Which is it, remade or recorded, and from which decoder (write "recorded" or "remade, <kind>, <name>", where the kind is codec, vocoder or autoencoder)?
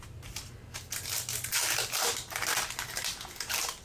recorded